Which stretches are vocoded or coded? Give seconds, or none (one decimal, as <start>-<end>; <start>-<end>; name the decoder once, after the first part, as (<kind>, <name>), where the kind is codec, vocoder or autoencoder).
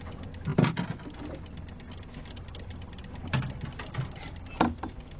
none